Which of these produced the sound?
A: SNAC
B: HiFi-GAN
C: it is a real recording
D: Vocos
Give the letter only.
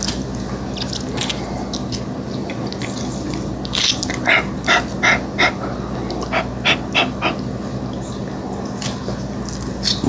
C